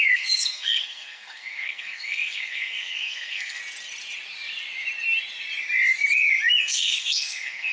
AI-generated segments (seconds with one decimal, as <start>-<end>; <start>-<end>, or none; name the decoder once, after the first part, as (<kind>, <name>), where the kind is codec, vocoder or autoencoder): 0.0-3.6 (codec, SNAC); 6.6-7.7